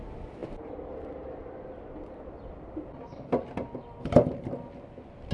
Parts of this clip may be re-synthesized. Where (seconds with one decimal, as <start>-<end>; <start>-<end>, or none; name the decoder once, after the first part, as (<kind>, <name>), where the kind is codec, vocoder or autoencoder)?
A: none